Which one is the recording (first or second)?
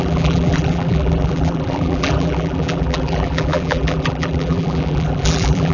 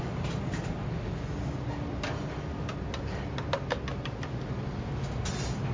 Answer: second